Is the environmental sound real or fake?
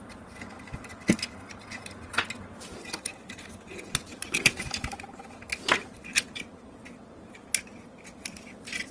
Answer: real